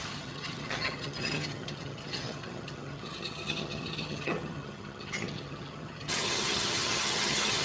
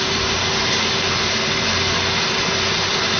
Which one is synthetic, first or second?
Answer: first